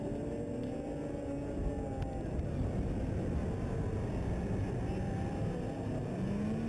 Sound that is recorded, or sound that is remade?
recorded